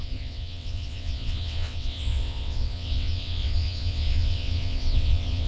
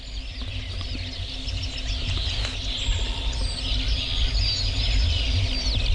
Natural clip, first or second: second